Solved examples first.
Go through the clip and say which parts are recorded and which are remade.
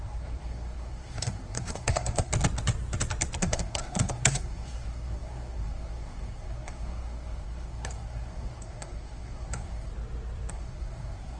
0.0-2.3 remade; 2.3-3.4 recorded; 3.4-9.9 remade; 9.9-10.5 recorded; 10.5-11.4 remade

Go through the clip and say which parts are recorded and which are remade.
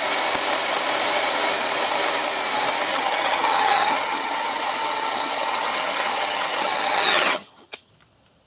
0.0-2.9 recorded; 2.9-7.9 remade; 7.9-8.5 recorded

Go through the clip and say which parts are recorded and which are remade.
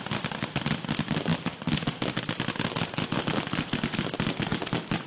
0.0-5.1 recorded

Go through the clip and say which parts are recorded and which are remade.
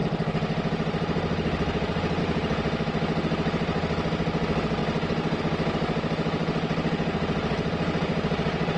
0.0-8.8 recorded